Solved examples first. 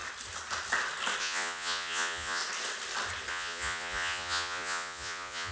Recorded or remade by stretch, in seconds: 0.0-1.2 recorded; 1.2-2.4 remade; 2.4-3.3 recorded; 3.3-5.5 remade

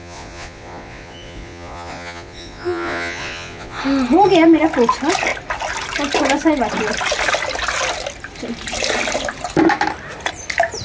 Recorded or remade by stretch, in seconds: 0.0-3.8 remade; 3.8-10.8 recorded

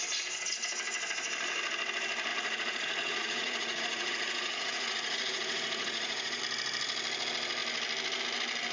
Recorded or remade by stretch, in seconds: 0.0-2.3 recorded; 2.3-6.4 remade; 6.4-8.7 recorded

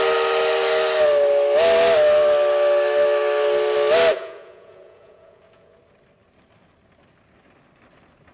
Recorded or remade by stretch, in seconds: 0.0-4.1 recorded; 4.1-5.8 remade; 5.8-8.3 recorded

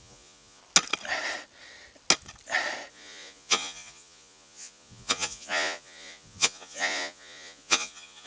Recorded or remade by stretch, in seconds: 0.0-0.6 remade; 0.6-2.9 recorded; 2.9-8.3 remade

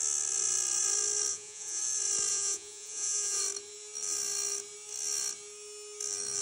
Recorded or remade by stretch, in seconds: 0.0-1.3 recorded; 1.3-1.8 remade; 1.8-2.3 recorded; 2.3-3.4 remade; 3.4-6.4 recorded

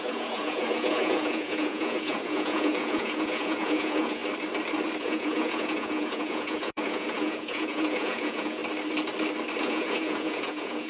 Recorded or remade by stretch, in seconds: 0.0-4.2 remade; 4.2-5.0 recorded; 5.0-8.6 remade; 8.6-9.6 recorded; 9.6-10.9 remade

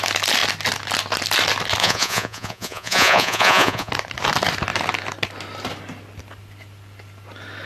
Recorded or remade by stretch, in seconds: 0.0-1.8 recorded; 1.8-3.9 remade; 3.9-7.7 recorded